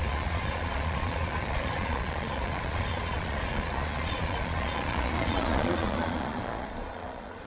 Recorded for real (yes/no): no